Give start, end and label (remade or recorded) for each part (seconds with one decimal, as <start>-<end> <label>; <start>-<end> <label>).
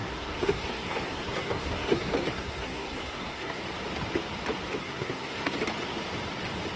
0.0-3.6 remade; 3.6-4.8 recorded; 4.8-5.6 remade; 5.6-6.8 recorded